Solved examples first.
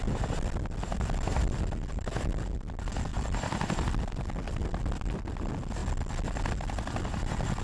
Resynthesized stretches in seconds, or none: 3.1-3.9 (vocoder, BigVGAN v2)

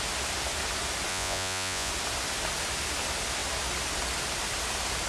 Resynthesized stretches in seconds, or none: 1.1-1.9 (vocoder, Vocos)

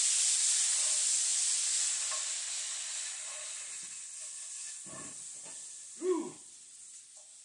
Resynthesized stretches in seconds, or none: none